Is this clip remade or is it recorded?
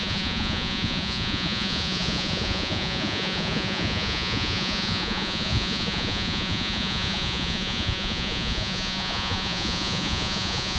remade